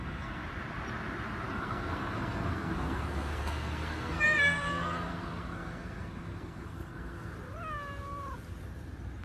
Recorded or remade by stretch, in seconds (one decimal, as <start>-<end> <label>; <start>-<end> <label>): 0.0-0.4 remade; 0.4-1.5 recorded; 1.5-7.3 remade; 7.3-9.2 recorded